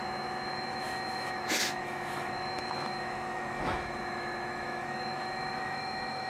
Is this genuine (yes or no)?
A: no